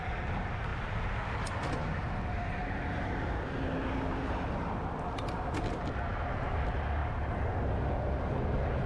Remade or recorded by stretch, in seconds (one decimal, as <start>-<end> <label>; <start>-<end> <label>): 0.0-8.9 recorded